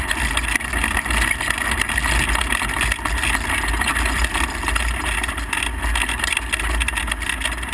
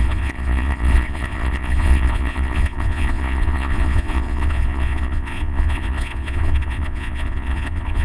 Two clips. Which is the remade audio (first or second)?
second